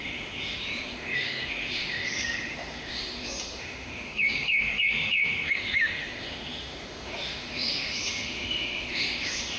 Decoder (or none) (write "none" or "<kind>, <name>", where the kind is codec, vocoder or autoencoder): autoencoder, DAC-VAE